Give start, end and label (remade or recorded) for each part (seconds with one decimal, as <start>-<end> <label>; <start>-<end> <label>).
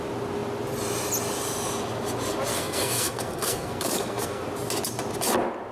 0.0-2.5 recorded; 2.5-4.4 remade; 4.4-5.7 recorded